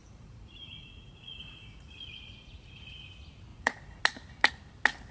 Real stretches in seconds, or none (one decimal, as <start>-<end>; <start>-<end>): 3.1-3.5; 4.0-5.1